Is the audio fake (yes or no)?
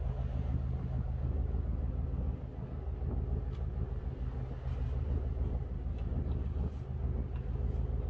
no